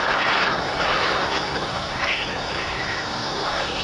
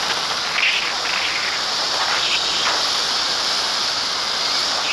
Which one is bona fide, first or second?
second